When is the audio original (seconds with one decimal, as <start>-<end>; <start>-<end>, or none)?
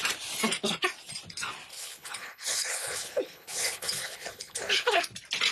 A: 0.0-1.7; 5.0-5.5